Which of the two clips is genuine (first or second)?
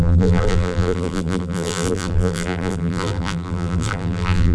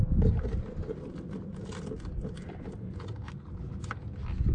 second